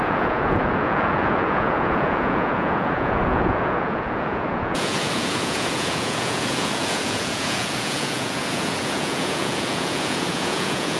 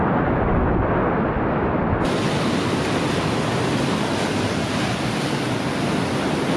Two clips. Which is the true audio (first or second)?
second